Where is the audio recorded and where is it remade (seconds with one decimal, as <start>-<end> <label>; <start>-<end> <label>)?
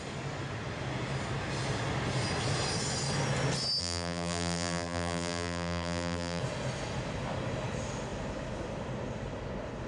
0.0-3.8 recorded; 3.8-6.4 remade; 6.4-9.9 recorded